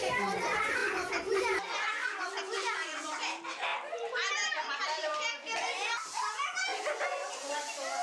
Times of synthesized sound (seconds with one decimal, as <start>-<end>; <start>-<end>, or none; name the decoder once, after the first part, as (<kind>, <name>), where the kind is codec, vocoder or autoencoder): none